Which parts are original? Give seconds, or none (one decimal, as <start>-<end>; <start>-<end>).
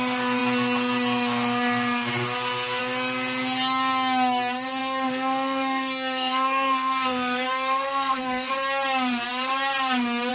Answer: 0.0-4.8; 8.5-10.3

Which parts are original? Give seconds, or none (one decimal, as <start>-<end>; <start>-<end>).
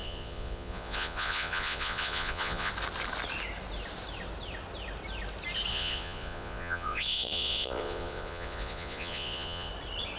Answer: 2.7-5.7; 9.7-10.2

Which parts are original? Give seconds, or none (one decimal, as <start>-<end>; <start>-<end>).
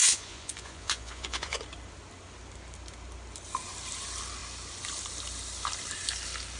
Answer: 1.6-6.6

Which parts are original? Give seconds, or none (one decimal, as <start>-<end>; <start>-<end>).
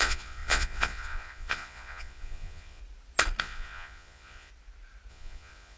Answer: 2.8-3.4; 4.5-5.1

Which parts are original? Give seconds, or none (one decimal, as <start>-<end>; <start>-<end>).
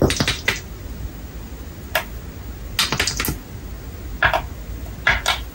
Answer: 0.0-5.5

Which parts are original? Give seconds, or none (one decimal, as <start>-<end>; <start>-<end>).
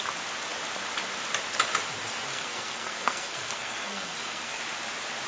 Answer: 0.0-2.3; 4.6-5.3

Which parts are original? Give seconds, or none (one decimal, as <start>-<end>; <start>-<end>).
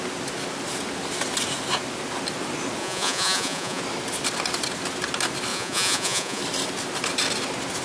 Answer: 0.0-2.8; 3.8-5.5; 6.4-7.8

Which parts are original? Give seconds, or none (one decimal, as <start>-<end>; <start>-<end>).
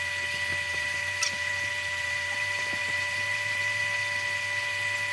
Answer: 0.0-0.7; 3.8-5.1